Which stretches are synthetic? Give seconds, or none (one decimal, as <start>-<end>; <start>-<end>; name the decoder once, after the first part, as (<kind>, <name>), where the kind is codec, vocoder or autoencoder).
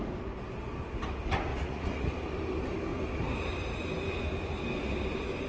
1.5-2.1 (vocoder, Vocos)